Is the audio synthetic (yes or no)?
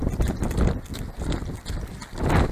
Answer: no